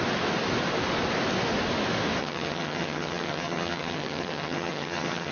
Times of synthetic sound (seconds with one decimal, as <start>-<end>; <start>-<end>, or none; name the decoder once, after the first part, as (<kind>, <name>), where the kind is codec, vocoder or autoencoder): 2.2-5.3 (vocoder, HiFi-GAN)